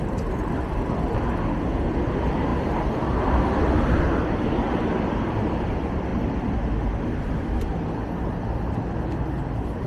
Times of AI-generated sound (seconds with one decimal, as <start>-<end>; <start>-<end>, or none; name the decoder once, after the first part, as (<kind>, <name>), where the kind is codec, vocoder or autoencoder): 2.5-3.4 (vocoder, BigVGAN v2)